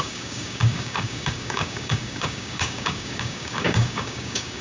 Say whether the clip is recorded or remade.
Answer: remade